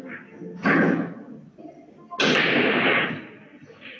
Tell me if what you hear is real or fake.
real